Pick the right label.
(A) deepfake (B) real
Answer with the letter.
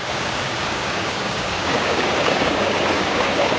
A